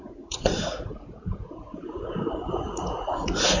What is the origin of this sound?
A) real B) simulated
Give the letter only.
B